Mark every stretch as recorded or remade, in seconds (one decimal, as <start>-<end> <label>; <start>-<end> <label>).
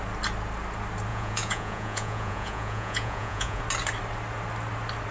0.0-1.1 recorded; 1.1-3.6 remade; 3.6-5.1 recorded